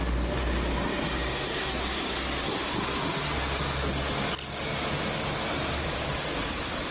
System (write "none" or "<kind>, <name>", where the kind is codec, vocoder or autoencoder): none